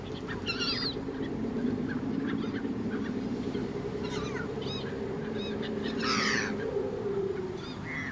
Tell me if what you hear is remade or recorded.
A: remade